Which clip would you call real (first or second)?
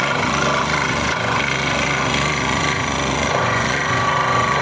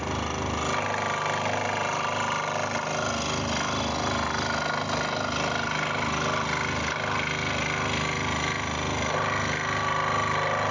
second